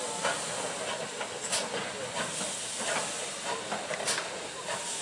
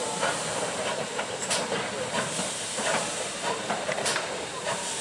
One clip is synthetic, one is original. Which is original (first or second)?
first